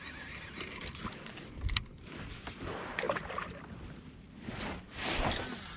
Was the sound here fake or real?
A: real